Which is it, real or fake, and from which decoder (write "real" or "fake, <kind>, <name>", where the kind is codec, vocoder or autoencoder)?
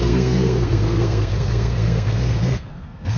fake, codec, SNAC